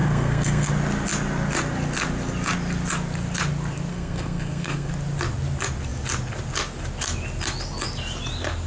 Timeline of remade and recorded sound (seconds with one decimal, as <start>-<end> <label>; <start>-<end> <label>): 0.0-0.7 remade; 0.7-3.9 recorded; 3.9-4.9 remade; 4.9-8.7 recorded